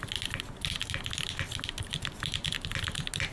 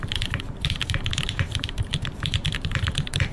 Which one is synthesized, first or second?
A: second